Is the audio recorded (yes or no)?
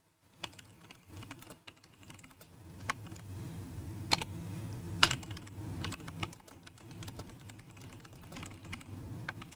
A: no